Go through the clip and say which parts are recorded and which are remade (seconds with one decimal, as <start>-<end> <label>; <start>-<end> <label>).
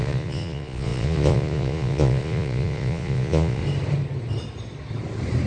0.0-3.6 remade; 3.6-5.5 recorded